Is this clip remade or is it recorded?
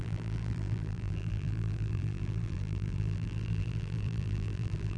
remade